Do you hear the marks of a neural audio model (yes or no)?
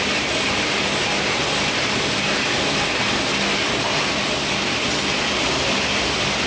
no